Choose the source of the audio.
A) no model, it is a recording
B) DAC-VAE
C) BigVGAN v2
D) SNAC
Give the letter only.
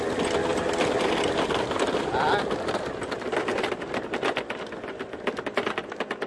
A